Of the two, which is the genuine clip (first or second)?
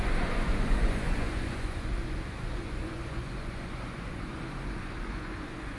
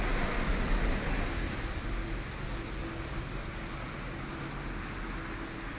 second